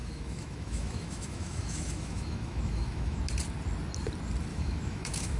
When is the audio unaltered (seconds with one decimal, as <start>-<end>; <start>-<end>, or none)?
3.2-4.5